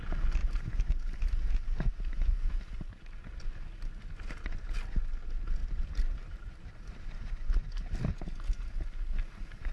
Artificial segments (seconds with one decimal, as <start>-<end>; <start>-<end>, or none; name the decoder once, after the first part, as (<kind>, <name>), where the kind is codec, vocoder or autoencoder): 0.4-3.3 (vocoder, BigVGAN v2); 5.6-6.9